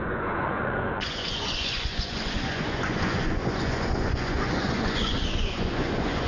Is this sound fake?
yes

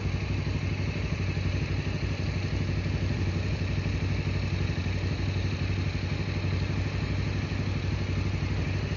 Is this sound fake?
no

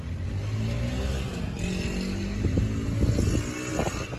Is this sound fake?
no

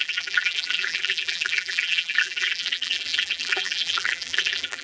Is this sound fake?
yes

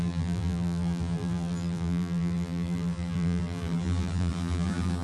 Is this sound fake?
yes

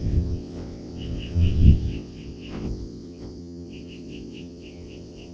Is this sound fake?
yes